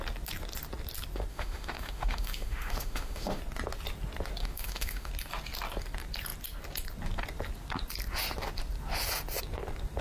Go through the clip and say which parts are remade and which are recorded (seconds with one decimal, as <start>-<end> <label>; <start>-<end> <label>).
0.0-1.3 recorded; 1.3-3.4 remade; 3.4-4.4 recorded; 4.4-5.1 remade; 5.1-10.0 recorded